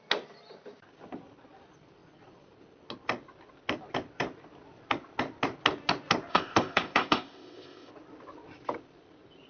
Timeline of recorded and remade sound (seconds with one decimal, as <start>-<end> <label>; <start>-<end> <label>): 0.0-6.3 recorded; 6.3-7.9 remade; 7.9-9.5 recorded